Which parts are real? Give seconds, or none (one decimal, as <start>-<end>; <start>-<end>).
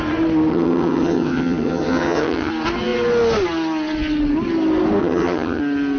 0.0-0.5; 2.5-5.0; 5.6-6.0